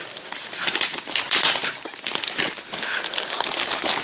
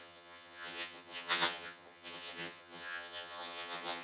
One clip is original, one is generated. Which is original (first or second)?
first